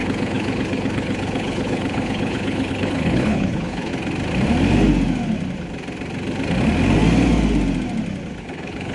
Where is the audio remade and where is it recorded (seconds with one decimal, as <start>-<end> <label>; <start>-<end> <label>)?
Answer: 0.0-3.9 remade; 3.9-8.4 recorded; 8.4-8.9 remade